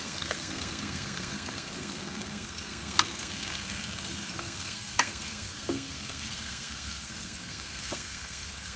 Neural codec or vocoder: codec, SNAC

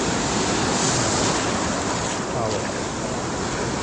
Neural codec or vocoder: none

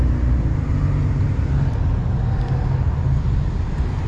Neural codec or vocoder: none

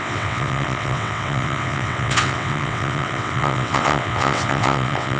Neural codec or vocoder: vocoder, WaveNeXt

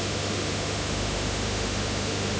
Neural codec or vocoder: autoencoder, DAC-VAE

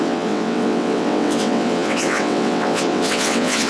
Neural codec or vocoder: vocoder, WaveNeXt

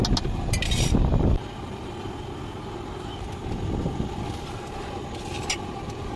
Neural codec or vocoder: none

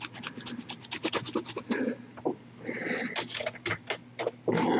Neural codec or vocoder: none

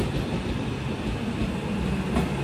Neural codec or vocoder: none